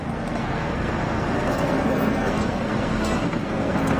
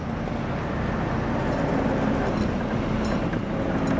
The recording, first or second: second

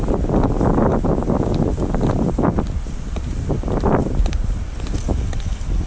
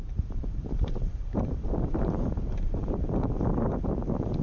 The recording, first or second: first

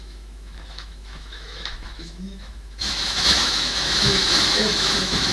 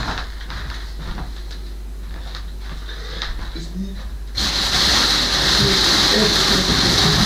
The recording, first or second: second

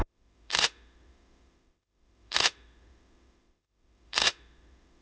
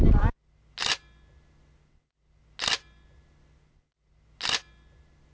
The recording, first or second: second